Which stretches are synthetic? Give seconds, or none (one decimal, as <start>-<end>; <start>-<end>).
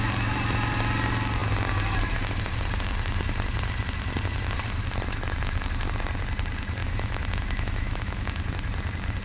6.8-8.4